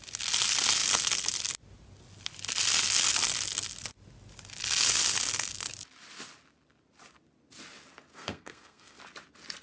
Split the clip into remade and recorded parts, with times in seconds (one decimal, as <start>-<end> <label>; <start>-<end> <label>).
0.0-8.1 recorded; 8.1-9.0 remade; 9.0-9.6 recorded